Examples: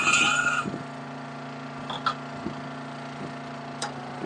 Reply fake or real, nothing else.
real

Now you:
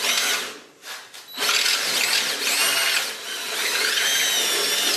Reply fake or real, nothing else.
real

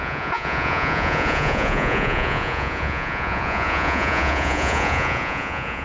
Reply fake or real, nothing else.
fake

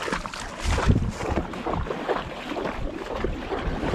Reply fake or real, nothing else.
real